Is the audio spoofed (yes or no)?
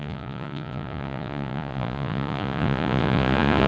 yes